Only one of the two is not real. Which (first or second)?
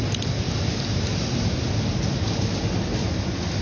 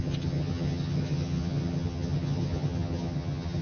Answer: second